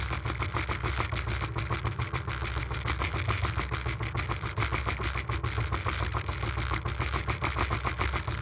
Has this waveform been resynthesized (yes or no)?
no